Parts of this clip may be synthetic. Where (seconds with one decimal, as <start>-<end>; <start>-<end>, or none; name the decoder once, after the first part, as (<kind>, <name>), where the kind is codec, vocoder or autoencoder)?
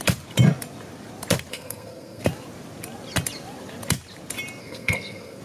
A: 1.5-2.2 (codec, SNAC); 4.6-5.4